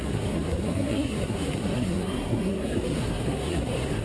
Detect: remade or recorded remade